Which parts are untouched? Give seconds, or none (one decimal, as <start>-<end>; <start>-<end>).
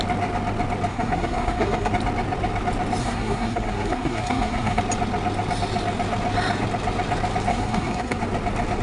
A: 0.0-0.9; 1.9-3.0; 4.8-7.5; 8.2-8.8